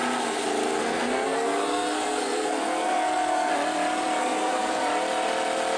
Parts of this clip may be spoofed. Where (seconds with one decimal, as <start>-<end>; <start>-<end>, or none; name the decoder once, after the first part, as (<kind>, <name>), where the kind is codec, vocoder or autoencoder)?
0.8-3.5 (codec, SNAC); 4.2-4.8

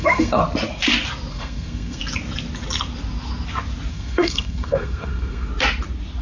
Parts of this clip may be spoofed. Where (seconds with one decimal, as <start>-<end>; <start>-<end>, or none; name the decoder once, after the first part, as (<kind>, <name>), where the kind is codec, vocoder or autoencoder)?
0.0-0.4 (codec, SNAC); 1.3-2.0; 3.9-5.5

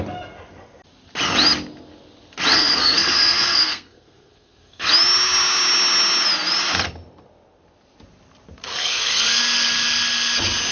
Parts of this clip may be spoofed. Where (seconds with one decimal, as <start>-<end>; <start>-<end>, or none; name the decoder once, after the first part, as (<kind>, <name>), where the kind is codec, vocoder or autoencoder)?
2.5-4.9 (codec, SNAC); 8.7-9.4

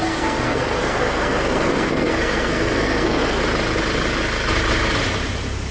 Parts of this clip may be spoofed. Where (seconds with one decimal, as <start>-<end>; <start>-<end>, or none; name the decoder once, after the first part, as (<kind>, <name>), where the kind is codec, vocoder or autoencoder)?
0.0-3.4 (codec, SNAC)

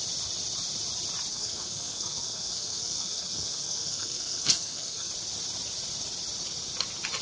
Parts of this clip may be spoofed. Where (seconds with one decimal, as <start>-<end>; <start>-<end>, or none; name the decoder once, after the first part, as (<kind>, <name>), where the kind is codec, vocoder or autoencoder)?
1.3-5.1 (codec, SNAC)